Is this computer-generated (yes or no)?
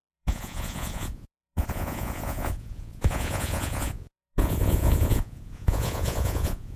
yes